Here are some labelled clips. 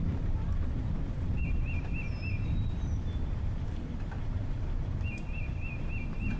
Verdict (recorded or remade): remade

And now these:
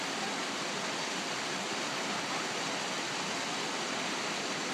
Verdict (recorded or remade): recorded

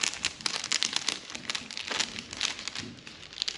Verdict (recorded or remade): recorded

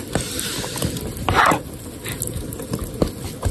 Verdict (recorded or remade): recorded